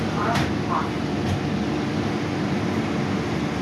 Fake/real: real